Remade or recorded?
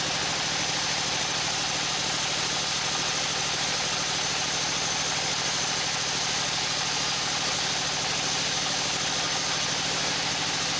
recorded